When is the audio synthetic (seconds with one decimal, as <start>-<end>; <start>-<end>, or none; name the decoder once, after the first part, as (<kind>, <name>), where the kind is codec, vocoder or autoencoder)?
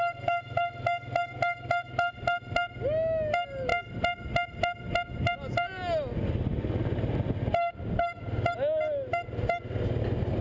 none